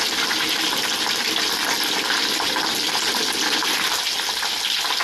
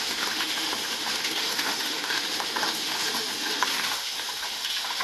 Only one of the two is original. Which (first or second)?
first